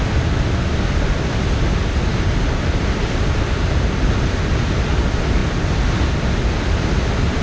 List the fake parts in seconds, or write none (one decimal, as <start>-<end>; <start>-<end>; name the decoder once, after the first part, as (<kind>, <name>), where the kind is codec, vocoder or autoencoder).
none